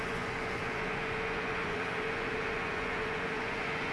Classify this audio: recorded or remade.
remade